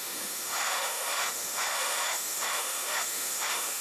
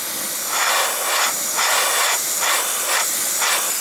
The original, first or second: second